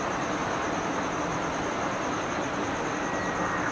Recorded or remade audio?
recorded